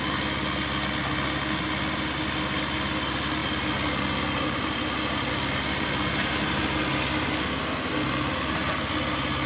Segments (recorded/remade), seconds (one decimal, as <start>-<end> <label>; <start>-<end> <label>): 0.0-9.5 recorded